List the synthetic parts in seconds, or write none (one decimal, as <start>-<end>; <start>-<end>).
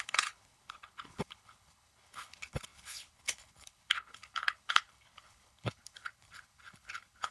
0.0-7.3